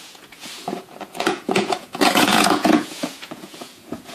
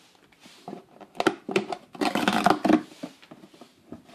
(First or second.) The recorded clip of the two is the second